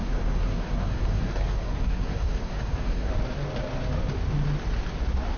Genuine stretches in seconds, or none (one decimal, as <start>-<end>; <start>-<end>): 3.1-5.4